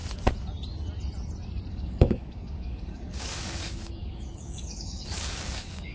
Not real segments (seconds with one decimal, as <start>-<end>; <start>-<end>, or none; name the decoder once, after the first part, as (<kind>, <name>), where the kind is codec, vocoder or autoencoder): 1.7-5.9 (codec, DAC)